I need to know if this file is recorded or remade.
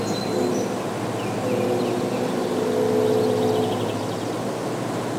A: recorded